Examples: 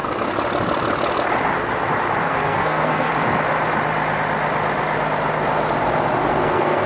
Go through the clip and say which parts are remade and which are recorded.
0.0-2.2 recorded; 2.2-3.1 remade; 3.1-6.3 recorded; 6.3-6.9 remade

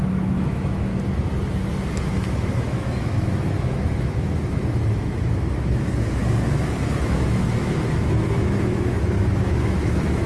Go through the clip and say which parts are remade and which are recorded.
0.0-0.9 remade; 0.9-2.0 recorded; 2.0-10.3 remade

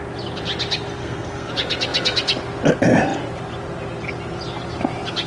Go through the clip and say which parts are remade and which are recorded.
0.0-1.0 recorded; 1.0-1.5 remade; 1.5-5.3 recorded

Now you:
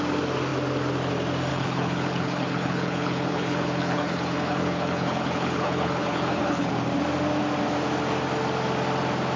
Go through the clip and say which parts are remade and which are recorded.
0.0-1.5 recorded; 1.5-6.7 remade; 6.7-9.4 recorded